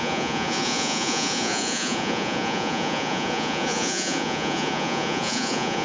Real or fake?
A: fake